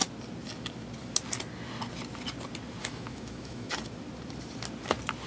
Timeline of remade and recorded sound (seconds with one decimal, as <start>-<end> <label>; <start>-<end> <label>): 0.0-2.8 recorded; 2.8-3.7 remade; 3.7-5.3 recorded